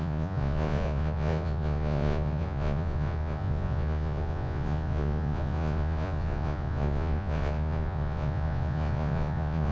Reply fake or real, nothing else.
fake